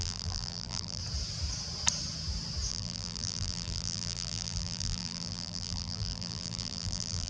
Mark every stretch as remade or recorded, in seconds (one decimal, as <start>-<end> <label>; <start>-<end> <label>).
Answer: 0.0-1.0 remade; 1.0-2.7 recorded; 2.7-7.3 remade